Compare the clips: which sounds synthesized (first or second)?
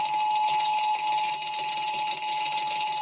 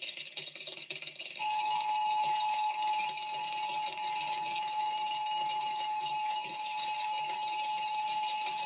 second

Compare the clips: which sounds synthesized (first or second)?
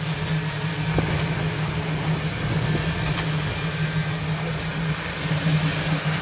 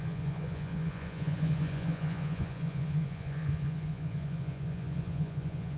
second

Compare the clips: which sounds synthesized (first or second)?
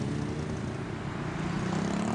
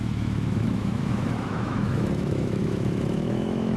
second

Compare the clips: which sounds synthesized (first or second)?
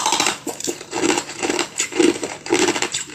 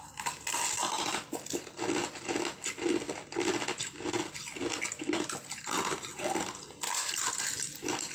first